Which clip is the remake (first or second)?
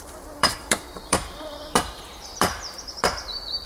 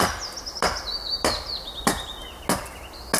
first